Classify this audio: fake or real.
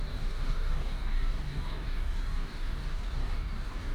fake